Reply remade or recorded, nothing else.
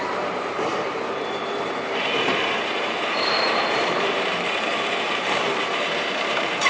remade